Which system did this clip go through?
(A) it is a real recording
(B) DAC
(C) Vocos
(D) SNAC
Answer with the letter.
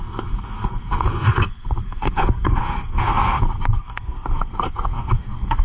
D